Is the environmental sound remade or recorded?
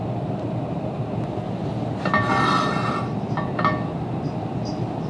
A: recorded